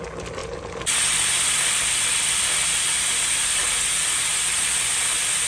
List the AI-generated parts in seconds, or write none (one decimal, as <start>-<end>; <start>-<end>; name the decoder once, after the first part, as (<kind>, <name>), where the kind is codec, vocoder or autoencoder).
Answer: 0.4-2.4 (vocoder, BigVGAN v2)